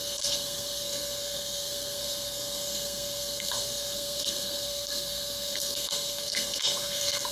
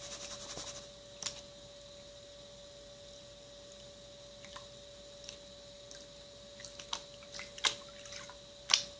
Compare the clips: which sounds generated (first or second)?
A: first